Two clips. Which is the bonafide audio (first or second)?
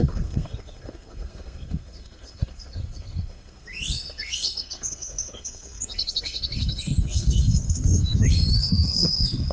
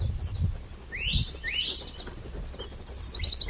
second